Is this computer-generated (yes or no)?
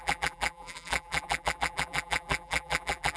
yes